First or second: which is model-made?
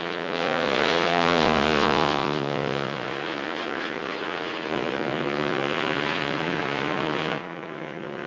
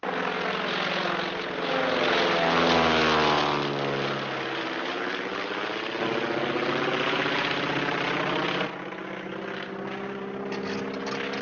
first